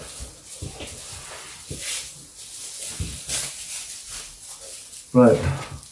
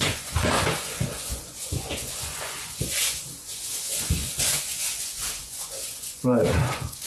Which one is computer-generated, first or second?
second